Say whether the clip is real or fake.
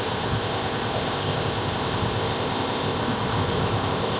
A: fake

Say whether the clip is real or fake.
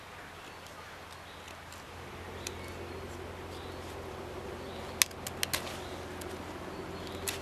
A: real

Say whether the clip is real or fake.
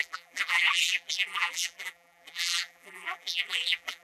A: fake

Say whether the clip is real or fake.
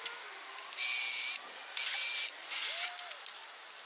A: real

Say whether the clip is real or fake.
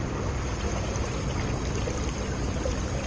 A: real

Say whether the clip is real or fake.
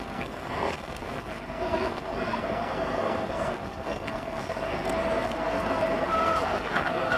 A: fake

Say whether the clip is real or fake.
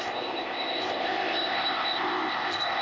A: fake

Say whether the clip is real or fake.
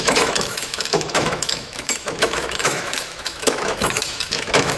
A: fake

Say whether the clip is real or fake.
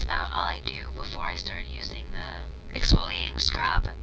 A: fake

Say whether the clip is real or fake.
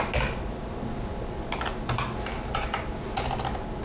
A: real